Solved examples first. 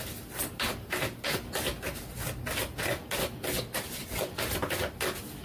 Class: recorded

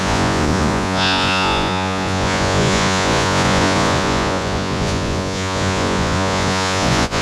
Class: remade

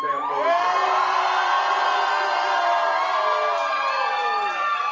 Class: recorded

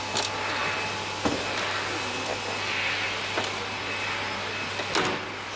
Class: recorded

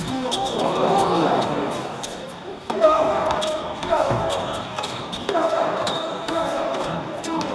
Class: remade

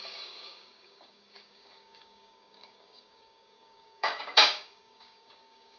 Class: remade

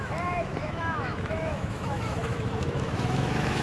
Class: remade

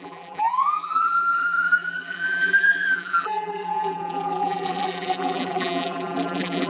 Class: remade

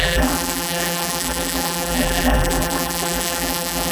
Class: remade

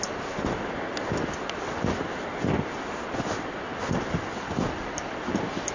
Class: recorded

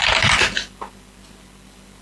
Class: recorded